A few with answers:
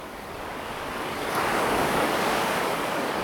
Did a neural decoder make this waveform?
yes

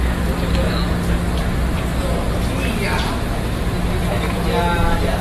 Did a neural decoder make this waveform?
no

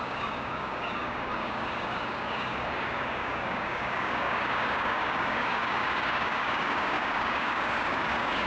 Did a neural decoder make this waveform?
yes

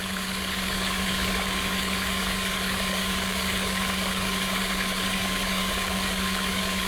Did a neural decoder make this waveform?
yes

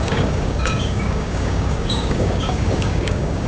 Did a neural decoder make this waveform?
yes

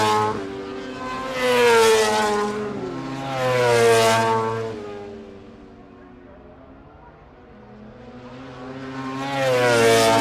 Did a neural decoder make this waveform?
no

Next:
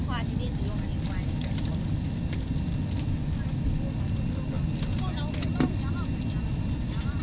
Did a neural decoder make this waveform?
no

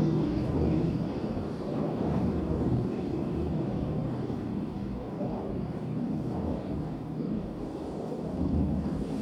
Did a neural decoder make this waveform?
yes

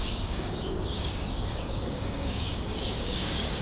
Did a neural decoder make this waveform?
yes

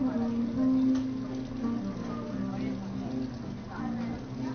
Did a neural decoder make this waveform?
no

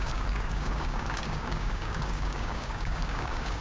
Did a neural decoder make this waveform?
yes